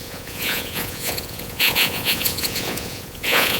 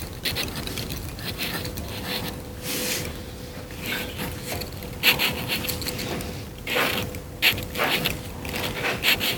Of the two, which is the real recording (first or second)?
second